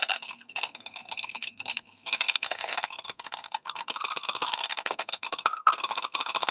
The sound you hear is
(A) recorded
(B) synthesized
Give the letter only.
B